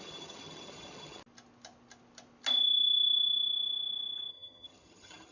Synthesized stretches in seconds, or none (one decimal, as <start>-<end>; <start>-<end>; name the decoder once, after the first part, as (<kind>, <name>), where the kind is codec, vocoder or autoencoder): 0.0-1.2 (vocoder, HiFi-GAN); 4.3-5.3